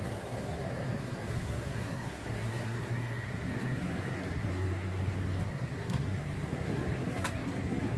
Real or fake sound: fake